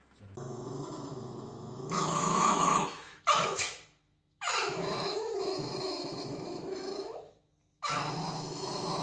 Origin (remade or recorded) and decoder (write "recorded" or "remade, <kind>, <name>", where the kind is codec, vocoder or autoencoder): remade, autoencoder, DAC-VAE